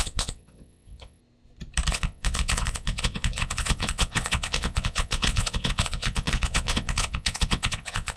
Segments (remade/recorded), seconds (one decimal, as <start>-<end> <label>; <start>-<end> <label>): 0.0-1.2 remade; 1.2-1.9 recorded; 1.9-8.2 remade